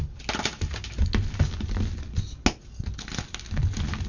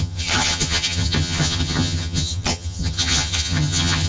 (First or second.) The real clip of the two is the first